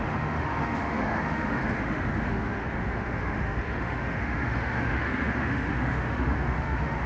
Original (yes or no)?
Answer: no